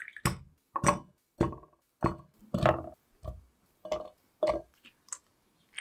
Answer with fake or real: real